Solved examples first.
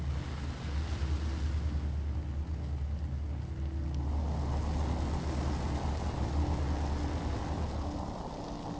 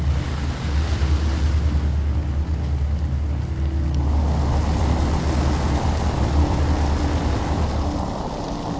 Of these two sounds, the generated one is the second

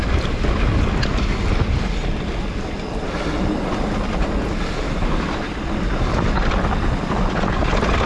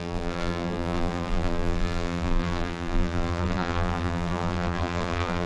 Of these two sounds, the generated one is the second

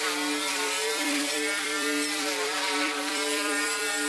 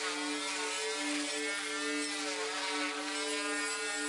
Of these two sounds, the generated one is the first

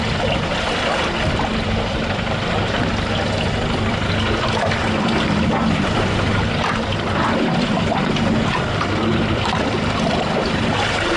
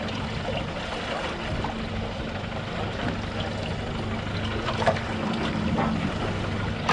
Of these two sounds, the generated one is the first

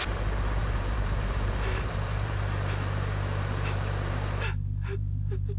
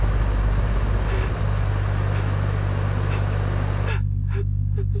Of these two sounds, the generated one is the first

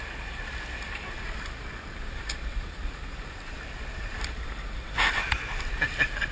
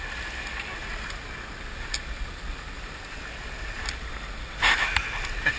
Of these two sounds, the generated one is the first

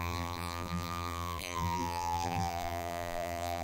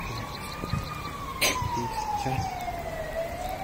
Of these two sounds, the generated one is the first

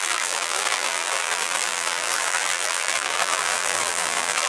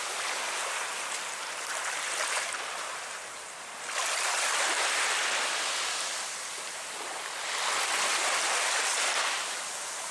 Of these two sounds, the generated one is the first